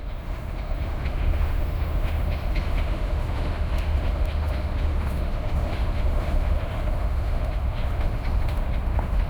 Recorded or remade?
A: remade